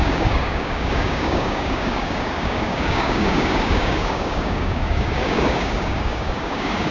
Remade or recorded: remade